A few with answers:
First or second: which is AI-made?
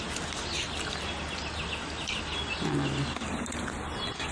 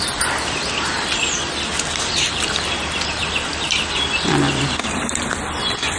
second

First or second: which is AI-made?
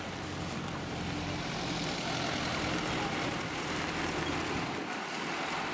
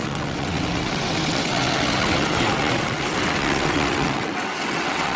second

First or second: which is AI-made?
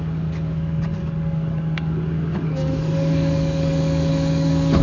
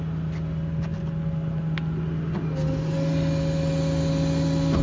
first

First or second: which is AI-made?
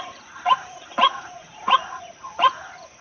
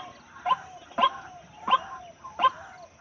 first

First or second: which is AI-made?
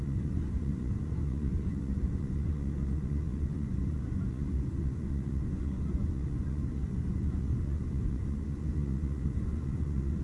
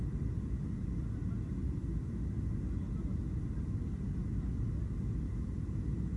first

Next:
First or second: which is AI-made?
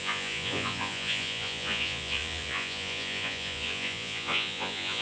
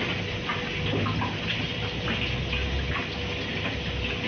first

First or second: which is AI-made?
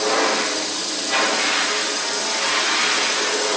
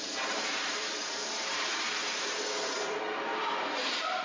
second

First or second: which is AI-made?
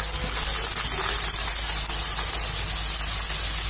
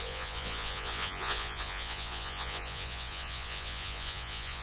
second